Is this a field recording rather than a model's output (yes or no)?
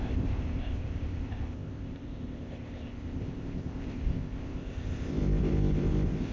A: no